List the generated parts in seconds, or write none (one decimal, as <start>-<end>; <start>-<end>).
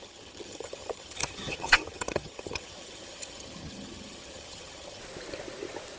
0.0-5.0